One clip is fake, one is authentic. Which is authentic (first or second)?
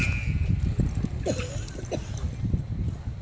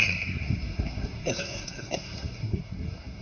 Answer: first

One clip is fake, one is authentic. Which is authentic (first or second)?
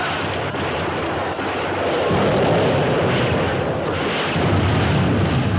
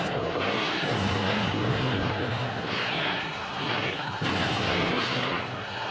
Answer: first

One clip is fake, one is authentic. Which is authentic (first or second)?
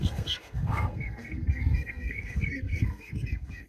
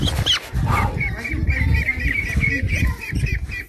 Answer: second